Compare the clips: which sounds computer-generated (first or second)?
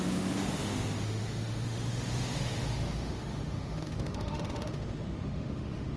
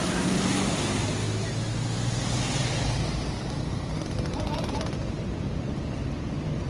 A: first